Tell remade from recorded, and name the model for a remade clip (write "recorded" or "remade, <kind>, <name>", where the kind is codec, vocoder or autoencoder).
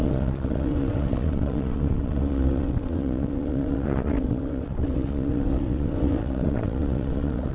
remade, vocoder, WaveNeXt